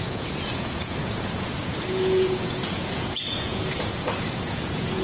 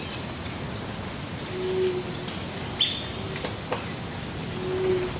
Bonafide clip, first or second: second